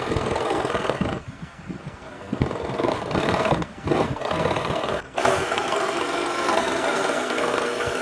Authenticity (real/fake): fake